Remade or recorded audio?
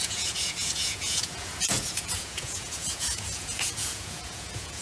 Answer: remade